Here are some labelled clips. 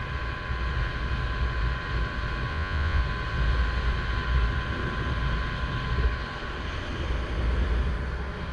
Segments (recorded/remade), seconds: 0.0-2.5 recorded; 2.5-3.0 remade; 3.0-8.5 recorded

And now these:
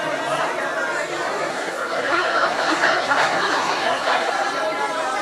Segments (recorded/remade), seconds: 0.0-1.5 recorded; 1.5-4.3 remade; 4.3-5.2 recorded

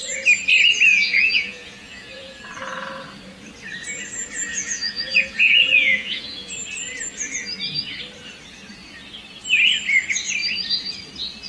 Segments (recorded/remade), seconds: 0.0-0.9 recorded; 0.9-2.4 remade; 2.4-4.5 recorded; 4.5-6.5 remade; 6.5-11.5 recorded

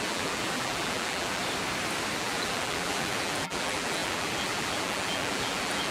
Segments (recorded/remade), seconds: 0.0-1.4 remade; 1.4-2.2 recorded; 2.2-5.9 remade

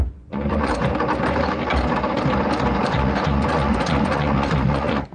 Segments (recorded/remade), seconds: 0.0-0.8 remade; 0.8-2.8 recorded; 2.8-5.1 remade

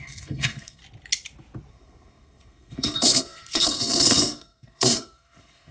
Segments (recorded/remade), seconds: 0.0-0.8 remade; 0.8-1.7 recorded; 1.7-5.7 remade

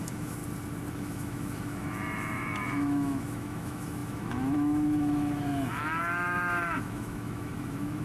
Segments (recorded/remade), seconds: 0.0-0.4 remade; 0.4-0.9 recorded; 0.9-8.0 remade

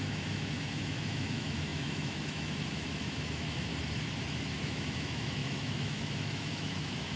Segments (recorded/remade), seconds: 0.0-3.7 remade; 3.7-4.2 recorded; 4.2-7.2 remade